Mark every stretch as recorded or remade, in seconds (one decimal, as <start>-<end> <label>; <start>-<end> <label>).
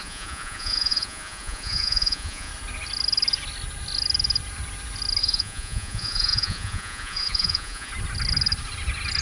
0.0-2.5 remade; 2.5-5.2 recorded; 5.2-7.9 remade; 7.9-9.2 recorded